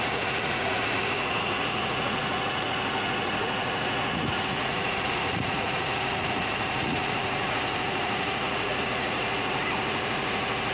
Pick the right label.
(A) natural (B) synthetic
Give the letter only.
B